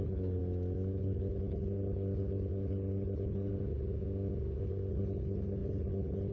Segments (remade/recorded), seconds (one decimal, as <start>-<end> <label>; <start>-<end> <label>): 0.0-0.4 remade; 0.4-1.0 recorded; 1.0-3.5 remade; 3.5-4.9 recorded; 4.9-6.3 remade